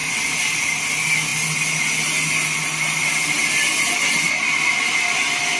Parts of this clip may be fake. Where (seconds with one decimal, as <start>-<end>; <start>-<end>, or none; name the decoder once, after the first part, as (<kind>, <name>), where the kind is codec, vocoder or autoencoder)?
none